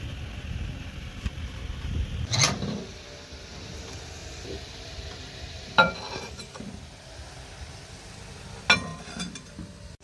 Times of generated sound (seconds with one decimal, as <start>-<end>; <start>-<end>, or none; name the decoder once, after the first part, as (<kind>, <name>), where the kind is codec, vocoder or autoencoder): 4.2-7.3 (vocoder, BigVGAN v2); 8.9-9.5